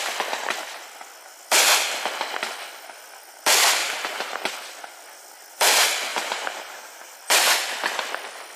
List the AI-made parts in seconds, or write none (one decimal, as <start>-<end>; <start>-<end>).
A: 3.8-4.4; 6.1-7.1